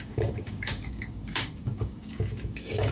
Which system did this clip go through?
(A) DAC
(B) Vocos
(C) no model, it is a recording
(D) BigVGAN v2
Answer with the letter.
A